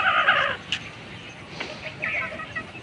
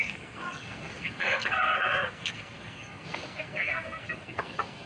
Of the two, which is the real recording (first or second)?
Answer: first